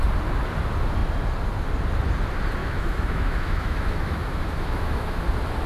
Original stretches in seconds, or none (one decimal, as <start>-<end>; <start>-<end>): 0.0-2.6; 5.3-5.7